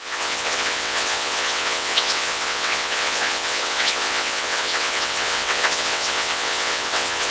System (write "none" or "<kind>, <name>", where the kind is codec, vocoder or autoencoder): vocoder, WaveNeXt